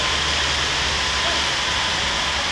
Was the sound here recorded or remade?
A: recorded